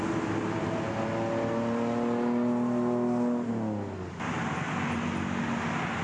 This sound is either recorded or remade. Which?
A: recorded